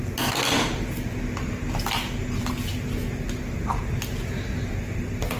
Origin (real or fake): real